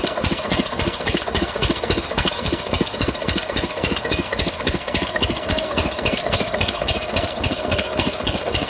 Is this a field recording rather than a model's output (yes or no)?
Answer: no